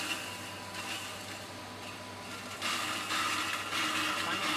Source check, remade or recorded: recorded